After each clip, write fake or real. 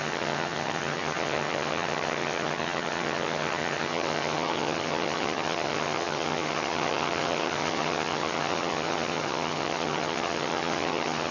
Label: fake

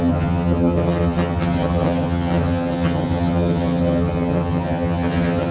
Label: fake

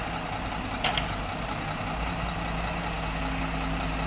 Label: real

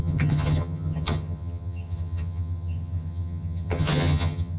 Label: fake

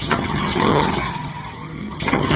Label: fake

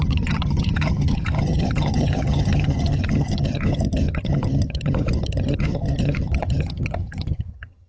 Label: fake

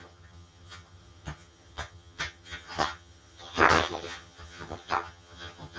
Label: fake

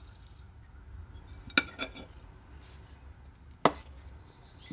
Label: real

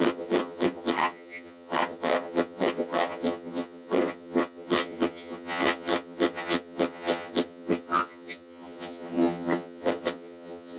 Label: fake